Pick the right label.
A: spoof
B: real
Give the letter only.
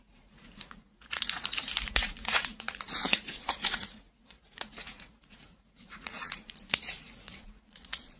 A